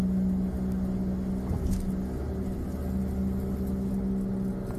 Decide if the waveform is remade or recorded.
recorded